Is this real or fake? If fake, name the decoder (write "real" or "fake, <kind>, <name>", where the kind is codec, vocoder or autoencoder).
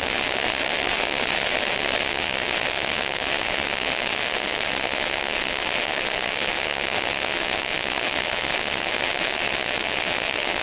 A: fake, vocoder, WaveNeXt